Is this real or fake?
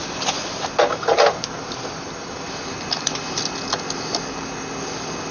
real